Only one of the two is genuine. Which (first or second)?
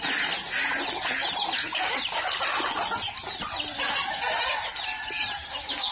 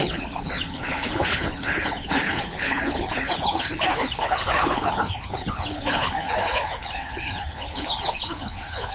first